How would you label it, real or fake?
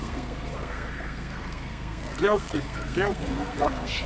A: fake